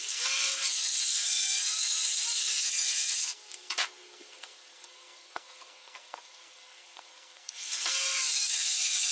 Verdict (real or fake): fake